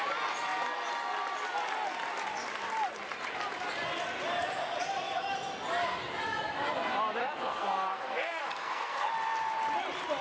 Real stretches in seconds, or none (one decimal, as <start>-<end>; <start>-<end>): 0.0-7.2; 9.1-10.2